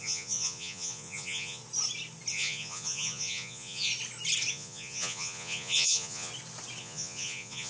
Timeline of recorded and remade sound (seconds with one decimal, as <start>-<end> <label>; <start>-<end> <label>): 0.0-1.6 remade; 1.6-2.3 recorded; 2.3-3.9 remade; 3.9-4.5 recorded; 4.5-6.3 remade; 6.3-6.8 recorded; 6.8-7.7 remade